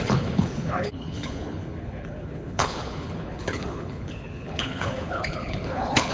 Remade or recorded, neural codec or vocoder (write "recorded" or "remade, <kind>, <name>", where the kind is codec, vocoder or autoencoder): remade, codec, HILCodec